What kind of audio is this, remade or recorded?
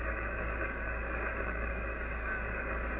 remade